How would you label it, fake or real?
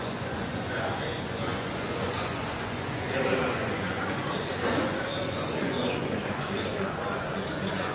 fake